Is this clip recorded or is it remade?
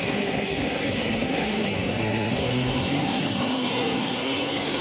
remade